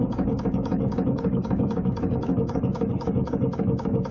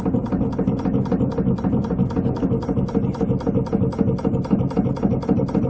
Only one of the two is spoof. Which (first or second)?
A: first